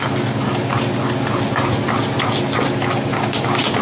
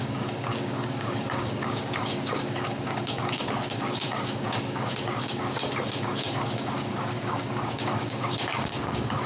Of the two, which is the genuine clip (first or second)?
first